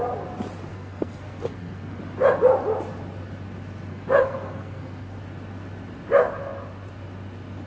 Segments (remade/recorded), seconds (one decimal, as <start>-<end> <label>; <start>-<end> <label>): 0.0-0.7 recorded; 0.7-2.0 remade; 2.0-3.9 recorded; 3.9-5.2 remade; 5.2-7.7 recorded